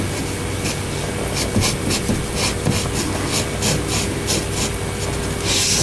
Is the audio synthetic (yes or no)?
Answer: no